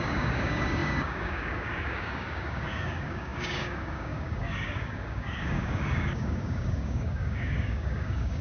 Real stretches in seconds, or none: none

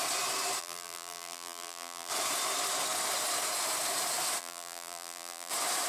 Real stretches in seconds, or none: 0.0-0.6; 2.1-4.4; 5.5-5.9

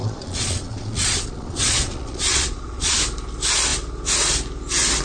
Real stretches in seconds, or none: 3.0-5.0

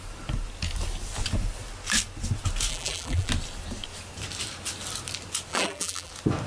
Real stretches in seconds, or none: 0.0-2.7; 3.3-5.5; 6.1-6.5

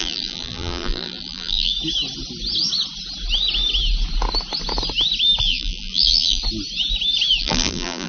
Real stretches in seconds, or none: 1.7-5.4; 6.4-7.4

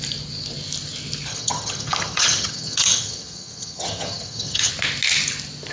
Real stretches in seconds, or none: 0.0-1.3; 4.7-5.7

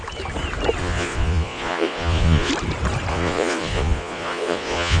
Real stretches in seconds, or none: 0.0-0.8; 2.5-3.1

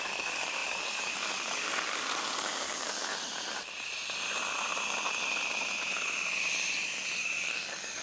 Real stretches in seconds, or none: 3.1-7.2